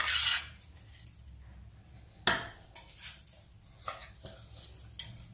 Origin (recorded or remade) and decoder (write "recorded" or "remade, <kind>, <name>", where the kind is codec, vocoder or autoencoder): recorded